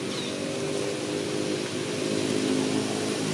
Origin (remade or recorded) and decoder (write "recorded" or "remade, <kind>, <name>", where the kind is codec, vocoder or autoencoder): recorded